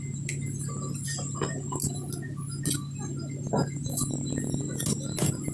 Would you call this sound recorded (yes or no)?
yes